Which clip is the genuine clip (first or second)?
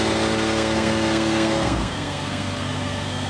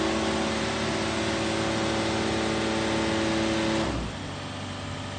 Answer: second